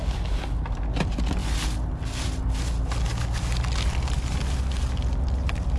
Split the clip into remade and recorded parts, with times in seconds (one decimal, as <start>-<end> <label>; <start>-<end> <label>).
0.0-5.8 recorded